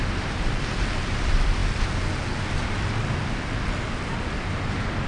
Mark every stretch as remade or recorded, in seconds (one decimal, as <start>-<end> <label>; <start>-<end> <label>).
0.0-5.1 recorded